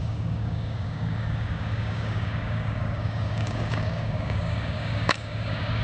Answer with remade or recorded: remade